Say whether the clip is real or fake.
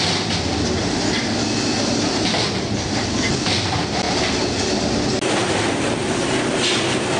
real